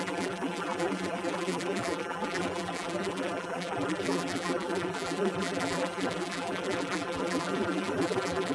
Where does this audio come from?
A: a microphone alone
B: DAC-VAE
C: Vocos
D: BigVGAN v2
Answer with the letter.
D